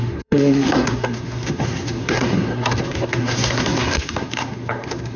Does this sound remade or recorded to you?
remade